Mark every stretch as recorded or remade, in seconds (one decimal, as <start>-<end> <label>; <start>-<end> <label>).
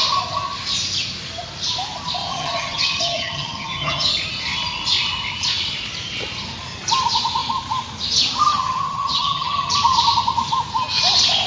0.0-2.3 recorded; 2.3-4.1 remade; 4.1-8.5 recorded; 8.5-9.7 remade; 9.7-11.5 recorded